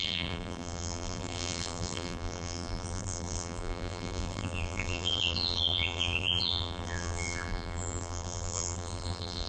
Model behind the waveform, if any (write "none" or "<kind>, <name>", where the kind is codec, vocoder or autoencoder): vocoder, BigVGAN v2